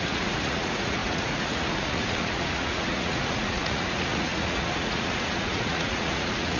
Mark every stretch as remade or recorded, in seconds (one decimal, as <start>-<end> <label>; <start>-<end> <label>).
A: 0.0-6.6 remade